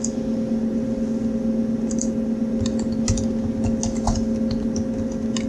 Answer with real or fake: real